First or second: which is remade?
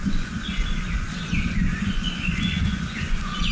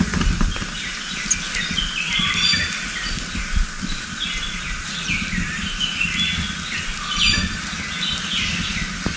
first